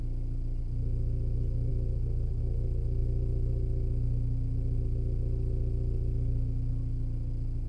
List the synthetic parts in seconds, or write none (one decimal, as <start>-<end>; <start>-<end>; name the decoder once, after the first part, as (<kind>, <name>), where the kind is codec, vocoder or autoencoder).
none